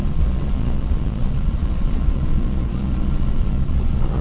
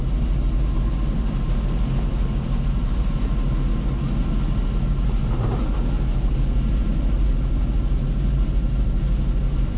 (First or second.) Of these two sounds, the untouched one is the second